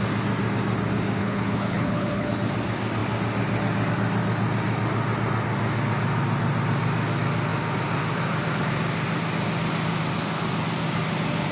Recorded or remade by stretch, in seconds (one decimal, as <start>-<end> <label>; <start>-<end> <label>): 0.0-1.2 recorded; 1.2-2.3 remade; 2.3-11.5 recorded